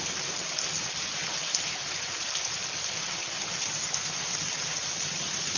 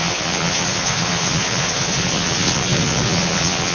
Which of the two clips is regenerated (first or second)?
second